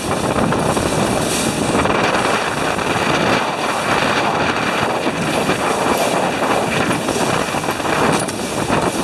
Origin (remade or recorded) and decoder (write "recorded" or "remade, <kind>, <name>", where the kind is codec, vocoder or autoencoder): recorded